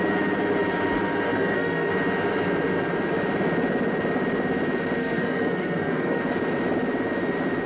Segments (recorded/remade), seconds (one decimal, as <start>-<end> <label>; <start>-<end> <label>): 0.0-1.3 recorded; 1.3-1.9 remade; 1.9-5.0 recorded; 5.0-6.2 remade; 6.2-7.7 recorded